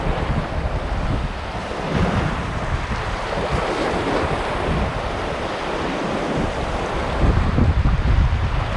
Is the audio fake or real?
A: fake